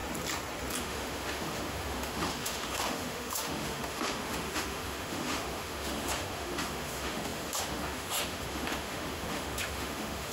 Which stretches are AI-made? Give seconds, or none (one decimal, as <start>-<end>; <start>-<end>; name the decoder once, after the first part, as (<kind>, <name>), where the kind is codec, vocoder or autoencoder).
0.8-10.3 (autoencoder, DAC-VAE)